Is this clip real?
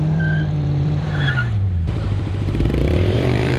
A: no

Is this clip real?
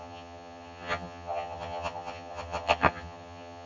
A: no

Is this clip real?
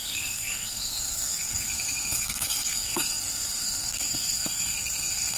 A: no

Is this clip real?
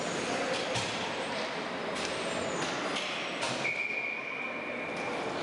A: yes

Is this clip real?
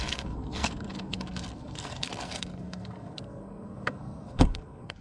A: no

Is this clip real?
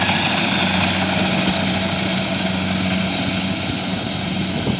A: yes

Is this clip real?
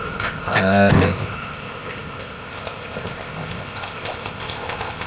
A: no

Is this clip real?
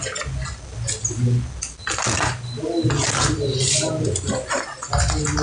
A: yes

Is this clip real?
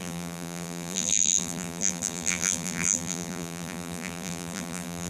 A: no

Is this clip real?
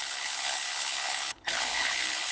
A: no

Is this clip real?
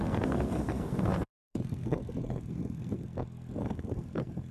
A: no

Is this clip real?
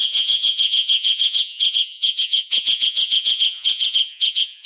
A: no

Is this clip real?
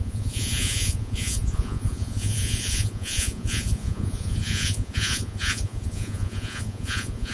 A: no